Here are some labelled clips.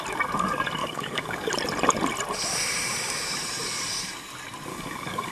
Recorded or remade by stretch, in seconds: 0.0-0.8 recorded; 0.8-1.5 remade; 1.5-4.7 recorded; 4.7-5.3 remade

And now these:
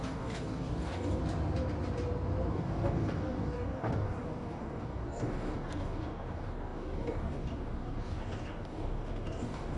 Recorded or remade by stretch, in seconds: 0.0-1.2 remade; 1.2-2.5 recorded; 2.5-9.8 remade